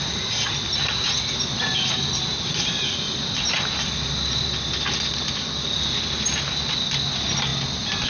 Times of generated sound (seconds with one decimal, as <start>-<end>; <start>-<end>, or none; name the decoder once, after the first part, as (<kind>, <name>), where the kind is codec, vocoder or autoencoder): none

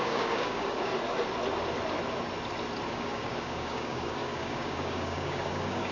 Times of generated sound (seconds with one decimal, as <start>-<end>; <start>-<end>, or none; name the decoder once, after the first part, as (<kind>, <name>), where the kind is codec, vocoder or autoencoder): 0.0-0.9 (codec, DAC); 2.9-5.9